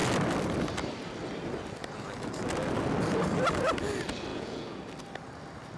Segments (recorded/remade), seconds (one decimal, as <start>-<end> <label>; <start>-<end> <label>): 0.0-4.3 recorded; 4.3-4.8 remade; 4.8-5.8 recorded